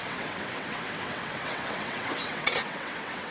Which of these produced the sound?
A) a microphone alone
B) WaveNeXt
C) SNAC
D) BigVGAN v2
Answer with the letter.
B